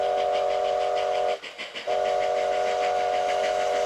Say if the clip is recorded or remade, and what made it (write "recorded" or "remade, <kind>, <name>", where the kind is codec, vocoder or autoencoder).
recorded